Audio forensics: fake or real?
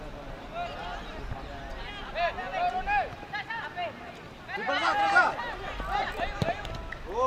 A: real